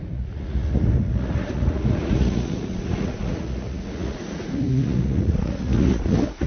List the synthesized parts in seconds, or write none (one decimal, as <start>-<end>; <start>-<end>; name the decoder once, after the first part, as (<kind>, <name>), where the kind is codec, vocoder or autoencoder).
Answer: 0.0-6.5 (vocoder, Vocos)